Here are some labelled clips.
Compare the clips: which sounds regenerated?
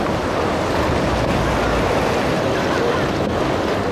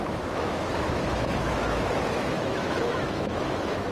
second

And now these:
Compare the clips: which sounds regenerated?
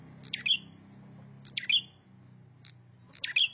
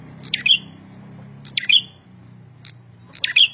second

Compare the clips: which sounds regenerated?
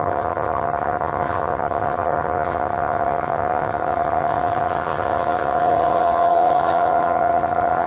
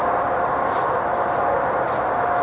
first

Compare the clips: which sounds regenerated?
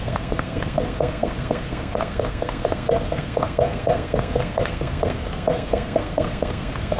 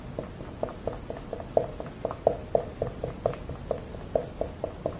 first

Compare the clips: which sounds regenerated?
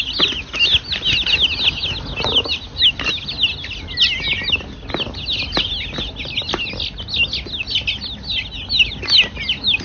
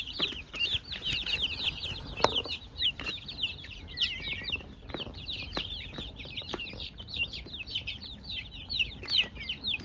second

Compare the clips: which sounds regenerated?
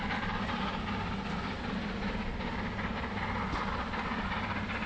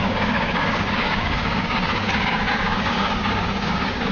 second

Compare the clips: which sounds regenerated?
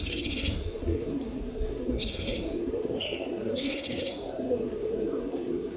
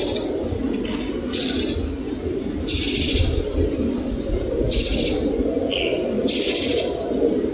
first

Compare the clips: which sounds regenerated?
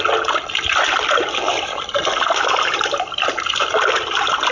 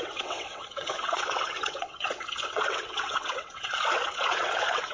second